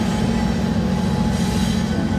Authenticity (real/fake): real